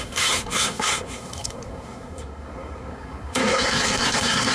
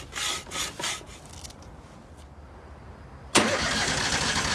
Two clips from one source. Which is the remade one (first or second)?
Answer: first